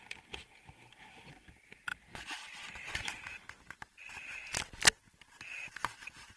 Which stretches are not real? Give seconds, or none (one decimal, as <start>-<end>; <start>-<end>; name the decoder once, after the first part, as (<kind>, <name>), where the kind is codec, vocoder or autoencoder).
none